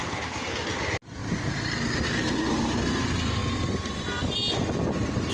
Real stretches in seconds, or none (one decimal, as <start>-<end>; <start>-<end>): 0.0-5.3